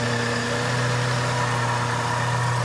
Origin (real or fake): real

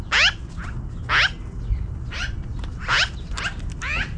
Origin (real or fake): real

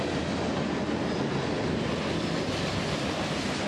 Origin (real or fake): real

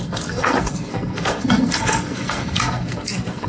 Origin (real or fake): fake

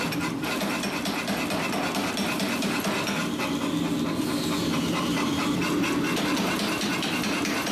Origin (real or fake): real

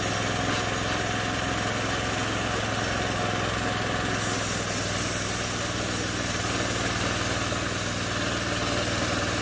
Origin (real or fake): real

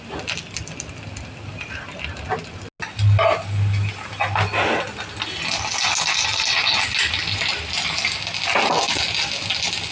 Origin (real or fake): real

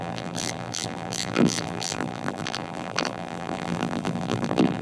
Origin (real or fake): fake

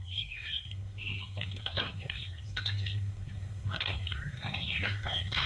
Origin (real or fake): fake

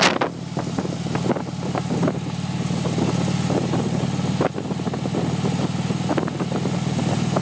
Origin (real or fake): real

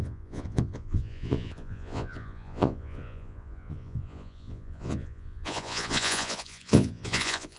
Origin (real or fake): fake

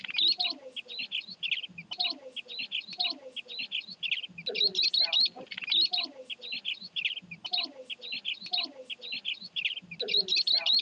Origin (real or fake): real